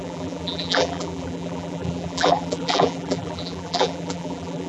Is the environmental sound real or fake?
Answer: fake